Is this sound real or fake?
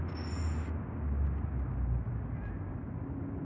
real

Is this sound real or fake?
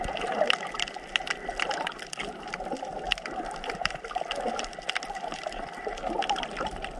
real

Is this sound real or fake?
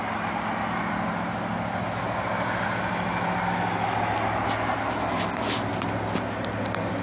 real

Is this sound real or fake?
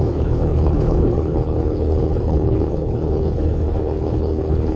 fake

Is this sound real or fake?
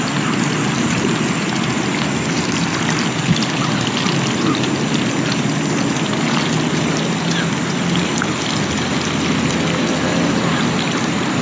real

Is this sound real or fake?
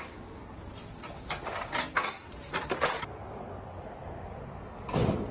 real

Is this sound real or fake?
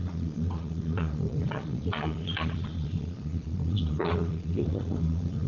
fake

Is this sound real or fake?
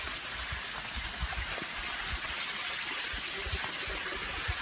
real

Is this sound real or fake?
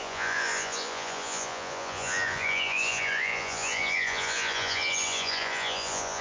fake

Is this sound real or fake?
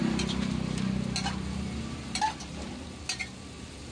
real